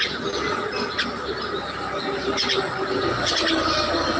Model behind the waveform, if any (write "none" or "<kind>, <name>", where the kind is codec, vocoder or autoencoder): none